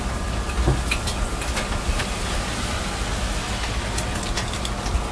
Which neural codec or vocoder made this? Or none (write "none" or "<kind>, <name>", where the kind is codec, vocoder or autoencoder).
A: none